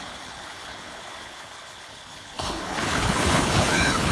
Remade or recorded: remade